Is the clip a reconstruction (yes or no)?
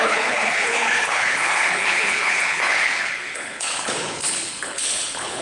yes